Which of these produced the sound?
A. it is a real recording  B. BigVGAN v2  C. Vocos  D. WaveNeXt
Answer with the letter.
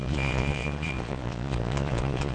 C